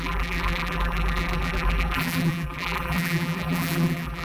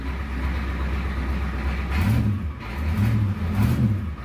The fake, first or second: first